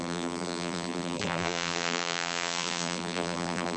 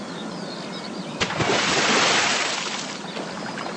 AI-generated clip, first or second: first